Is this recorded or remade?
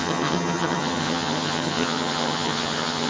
remade